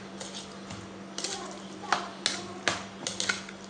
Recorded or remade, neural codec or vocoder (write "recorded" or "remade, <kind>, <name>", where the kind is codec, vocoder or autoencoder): recorded